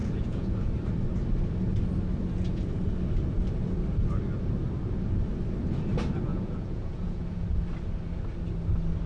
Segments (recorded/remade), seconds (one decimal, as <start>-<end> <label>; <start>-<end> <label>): 0.0-0.7 remade; 0.7-6.3 recorded; 6.3-7.4 remade; 7.4-9.1 recorded